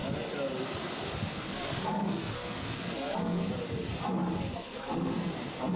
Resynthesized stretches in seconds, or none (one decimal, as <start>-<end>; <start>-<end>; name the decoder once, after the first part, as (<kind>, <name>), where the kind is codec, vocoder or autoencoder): 1.3-3.5 (codec, SNAC); 4.6-5.3